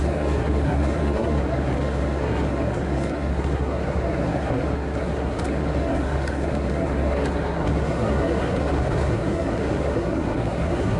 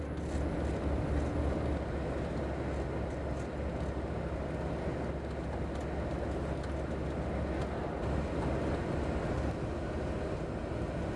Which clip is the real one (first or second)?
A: second